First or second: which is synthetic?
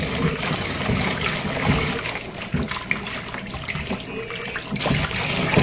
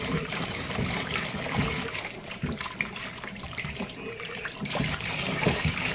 second